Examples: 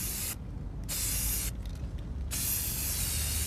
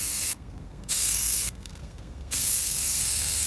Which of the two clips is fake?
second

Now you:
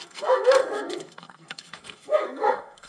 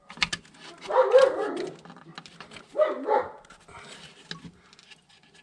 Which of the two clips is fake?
first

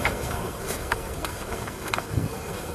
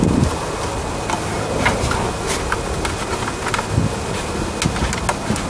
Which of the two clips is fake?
first